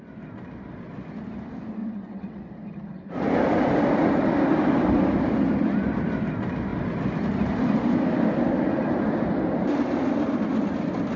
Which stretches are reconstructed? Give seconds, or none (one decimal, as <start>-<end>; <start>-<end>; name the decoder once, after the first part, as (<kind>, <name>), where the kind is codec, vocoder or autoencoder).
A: 1.8-2.4 (vocoder, WaveNeXt)